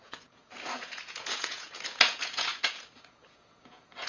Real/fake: fake